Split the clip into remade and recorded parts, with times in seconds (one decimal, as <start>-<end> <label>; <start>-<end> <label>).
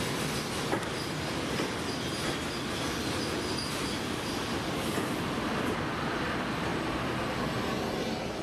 0.0-8.4 recorded